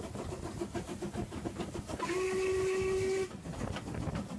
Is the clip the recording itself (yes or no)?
yes